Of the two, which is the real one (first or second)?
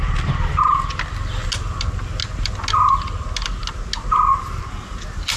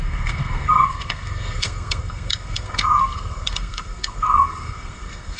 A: first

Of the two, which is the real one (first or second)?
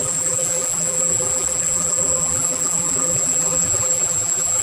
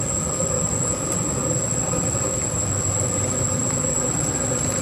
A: second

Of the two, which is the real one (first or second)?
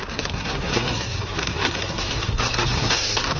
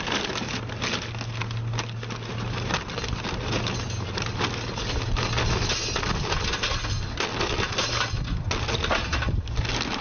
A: second